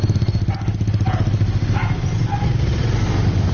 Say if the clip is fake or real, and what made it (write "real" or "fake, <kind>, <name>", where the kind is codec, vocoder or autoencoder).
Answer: real